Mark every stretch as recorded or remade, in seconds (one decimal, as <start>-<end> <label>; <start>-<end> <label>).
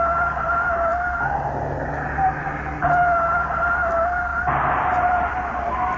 0.0-4.3 recorded; 4.3-5.3 remade; 5.3-6.0 recorded